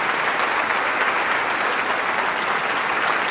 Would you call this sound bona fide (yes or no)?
yes